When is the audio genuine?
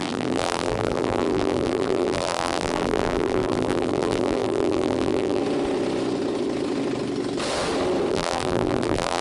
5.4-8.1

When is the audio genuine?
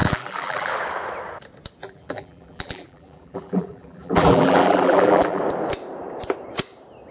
0.7-1.8; 5.4-7.1